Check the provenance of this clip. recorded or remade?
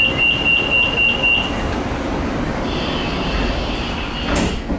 recorded